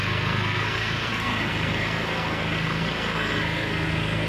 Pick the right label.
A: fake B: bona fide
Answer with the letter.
A